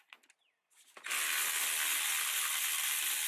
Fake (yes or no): no